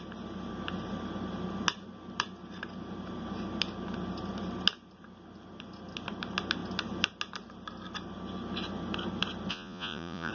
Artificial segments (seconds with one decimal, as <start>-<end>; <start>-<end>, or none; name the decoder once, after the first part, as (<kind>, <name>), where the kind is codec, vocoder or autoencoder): 9.5-10.3 (vocoder, Vocos)